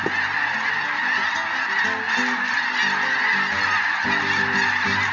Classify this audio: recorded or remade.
recorded